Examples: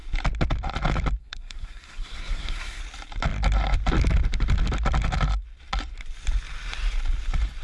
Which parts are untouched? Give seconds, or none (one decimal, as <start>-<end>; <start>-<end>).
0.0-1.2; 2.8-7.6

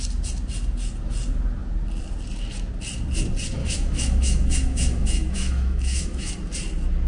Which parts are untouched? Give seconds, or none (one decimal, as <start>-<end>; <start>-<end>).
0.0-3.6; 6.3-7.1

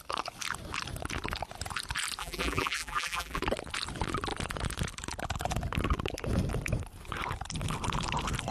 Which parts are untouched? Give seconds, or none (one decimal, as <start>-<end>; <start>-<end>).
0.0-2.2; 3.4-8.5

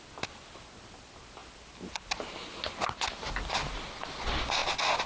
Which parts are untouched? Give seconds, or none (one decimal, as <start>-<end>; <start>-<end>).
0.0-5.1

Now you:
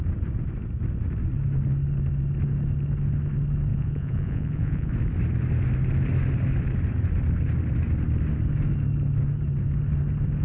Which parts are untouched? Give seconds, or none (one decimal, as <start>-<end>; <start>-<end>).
0.0-3.7; 4.9-10.4